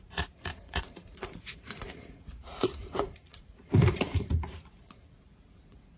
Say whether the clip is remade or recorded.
remade